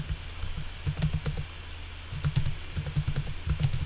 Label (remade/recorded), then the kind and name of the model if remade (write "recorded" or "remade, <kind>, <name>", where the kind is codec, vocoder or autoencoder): recorded